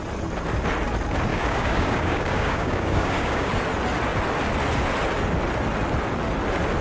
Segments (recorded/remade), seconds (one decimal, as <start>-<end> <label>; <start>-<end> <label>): 0.0-1.3 recorded; 1.3-3.5 remade; 3.5-6.8 recorded